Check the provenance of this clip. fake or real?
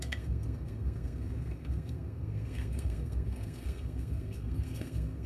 fake